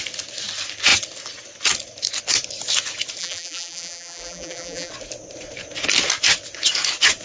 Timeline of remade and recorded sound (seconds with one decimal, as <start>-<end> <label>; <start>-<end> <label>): 0.0-3.2 recorded; 3.2-4.9 remade; 4.9-7.2 recorded